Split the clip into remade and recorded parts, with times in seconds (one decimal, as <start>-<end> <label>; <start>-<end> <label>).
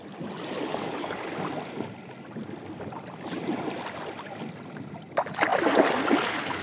0.0-0.7 recorded; 0.7-1.3 remade; 1.3-6.6 recorded